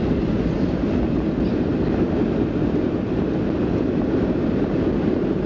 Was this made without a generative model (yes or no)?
no